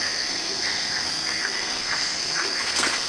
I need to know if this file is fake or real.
fake